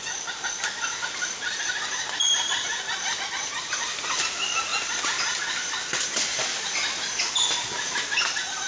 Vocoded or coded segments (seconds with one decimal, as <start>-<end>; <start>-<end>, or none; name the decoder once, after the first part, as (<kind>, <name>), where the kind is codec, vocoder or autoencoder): none